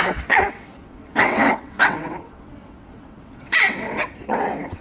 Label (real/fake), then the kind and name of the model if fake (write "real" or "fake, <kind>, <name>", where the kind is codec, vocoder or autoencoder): fake, vocoder, WaveNeXt